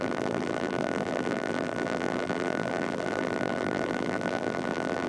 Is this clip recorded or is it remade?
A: remade